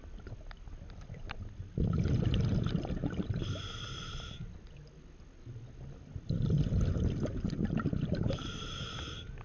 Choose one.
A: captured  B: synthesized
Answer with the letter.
A